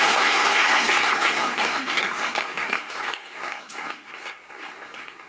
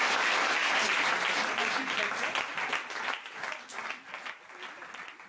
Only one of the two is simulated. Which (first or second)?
first